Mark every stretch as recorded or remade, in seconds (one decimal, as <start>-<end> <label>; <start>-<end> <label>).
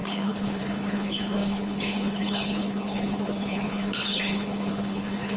0.0-5.4 remade